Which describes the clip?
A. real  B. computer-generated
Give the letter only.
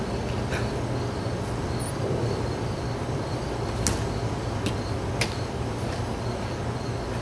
A